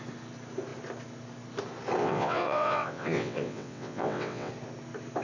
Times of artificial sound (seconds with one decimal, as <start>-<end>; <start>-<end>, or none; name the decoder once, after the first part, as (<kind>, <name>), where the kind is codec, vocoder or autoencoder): 2.0-4.5 (vocoder, WaveNeXt)